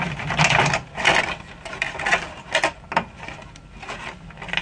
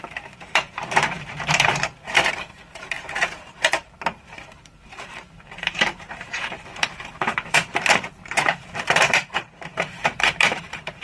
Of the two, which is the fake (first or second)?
second